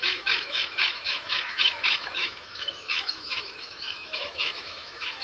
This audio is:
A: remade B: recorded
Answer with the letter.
A